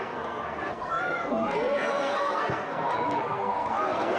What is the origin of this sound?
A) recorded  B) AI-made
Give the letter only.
B